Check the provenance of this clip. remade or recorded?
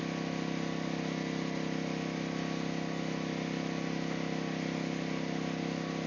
recorded